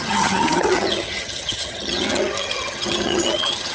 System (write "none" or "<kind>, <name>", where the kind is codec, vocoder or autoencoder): vocoder, HiFi-GAN